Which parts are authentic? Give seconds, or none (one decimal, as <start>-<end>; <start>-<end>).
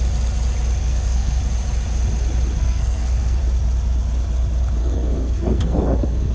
0.0-0.8; 1.4-2.6; 3.4-4.8